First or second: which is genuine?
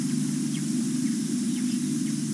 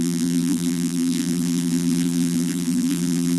first